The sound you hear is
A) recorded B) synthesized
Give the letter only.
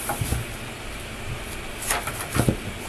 A